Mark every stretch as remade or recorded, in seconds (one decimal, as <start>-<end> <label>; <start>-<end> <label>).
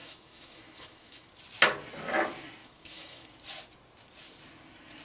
0.0-1.3 remade; 1.3-2.6 recorded; 2.6-3.3 remade; 3.3-5.0 recorded